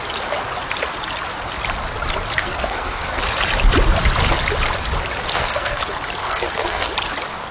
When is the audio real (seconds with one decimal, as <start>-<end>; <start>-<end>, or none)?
0.0-2.4; 3.2-5.3; 5.8-6.2; 6.9-7.5